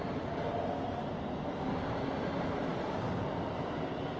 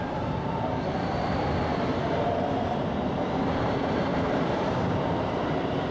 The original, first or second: first